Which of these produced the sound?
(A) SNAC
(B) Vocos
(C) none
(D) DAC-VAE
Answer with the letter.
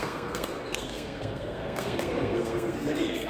A